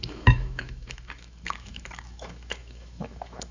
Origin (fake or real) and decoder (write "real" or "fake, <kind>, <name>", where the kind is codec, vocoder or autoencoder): fake, autoencoder, DAC-VAE